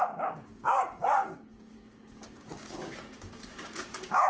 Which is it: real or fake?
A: fake